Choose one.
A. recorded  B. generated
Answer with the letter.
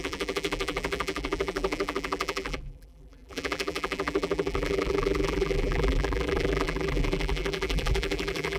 B